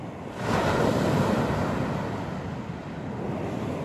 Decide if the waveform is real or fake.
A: real